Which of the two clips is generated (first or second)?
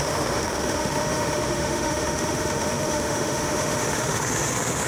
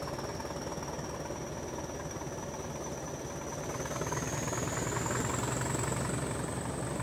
first